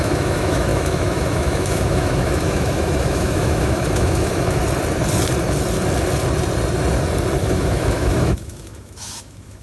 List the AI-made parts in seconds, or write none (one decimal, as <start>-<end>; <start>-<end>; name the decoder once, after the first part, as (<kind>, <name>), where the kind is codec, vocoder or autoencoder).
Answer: 0.0-4.6 (autoencoder, DAC-VAE); 7.4-9.6